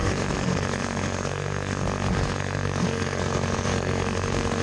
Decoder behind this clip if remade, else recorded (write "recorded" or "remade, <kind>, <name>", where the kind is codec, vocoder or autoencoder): remade, codec, SNAC